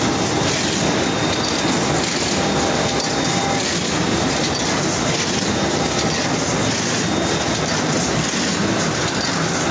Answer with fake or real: real